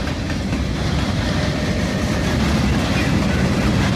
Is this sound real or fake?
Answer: real